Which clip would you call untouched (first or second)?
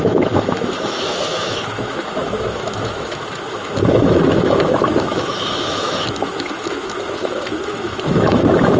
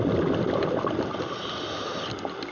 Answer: second